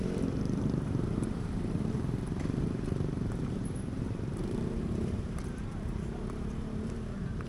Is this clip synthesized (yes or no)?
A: yes